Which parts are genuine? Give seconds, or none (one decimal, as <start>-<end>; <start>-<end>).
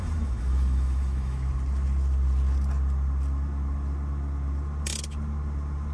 1.5-5.9